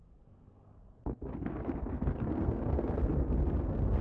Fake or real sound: fake